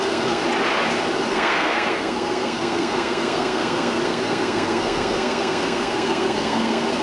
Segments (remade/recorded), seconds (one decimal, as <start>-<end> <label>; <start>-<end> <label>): 0.0-0.4 remade; 0.4-1.3 recorded; 1.3-7.0 remade